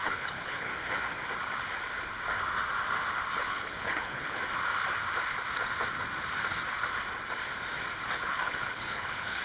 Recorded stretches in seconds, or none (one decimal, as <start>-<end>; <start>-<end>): 0.7-3.3; 4.4-8.1